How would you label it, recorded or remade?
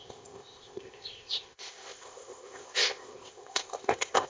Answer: remade